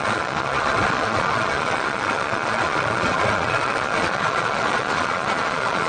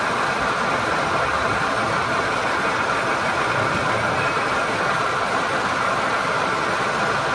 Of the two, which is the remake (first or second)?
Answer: first